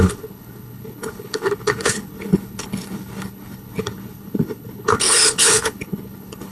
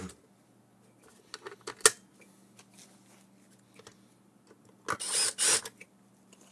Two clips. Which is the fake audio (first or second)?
first